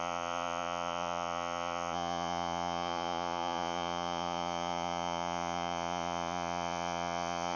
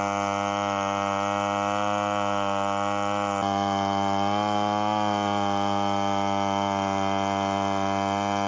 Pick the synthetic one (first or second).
first